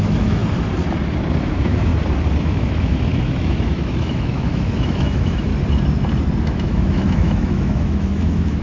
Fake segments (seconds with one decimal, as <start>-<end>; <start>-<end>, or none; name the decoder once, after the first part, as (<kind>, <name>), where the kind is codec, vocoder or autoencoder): 0.0-0.4 (autoencoder, DAC-VAE); 1.5-1.9; 2.4-5.5; 6.4-8.6